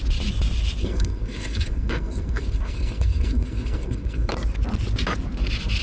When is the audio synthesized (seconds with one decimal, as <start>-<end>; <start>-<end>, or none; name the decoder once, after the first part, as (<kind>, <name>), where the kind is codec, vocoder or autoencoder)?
0.8-4.3 (codec, SNAC)